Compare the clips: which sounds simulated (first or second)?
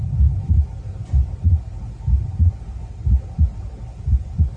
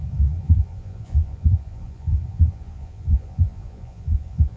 second